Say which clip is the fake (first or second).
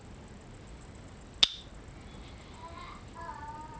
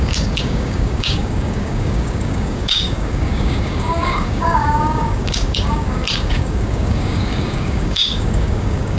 second